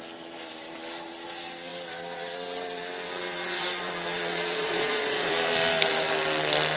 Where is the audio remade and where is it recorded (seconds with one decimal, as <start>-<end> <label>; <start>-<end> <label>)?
0.0-4.3 recorded; 4.3-5.3 remade; 5.3-6.8 recorded